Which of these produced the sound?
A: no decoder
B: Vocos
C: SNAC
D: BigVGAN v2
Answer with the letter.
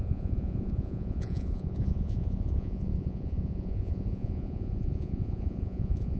B